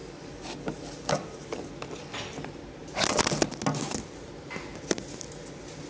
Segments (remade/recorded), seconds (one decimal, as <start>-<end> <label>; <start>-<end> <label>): 0.0-1.7 remade; 1.7-5.9 recorded